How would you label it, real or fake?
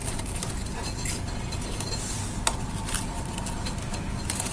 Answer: real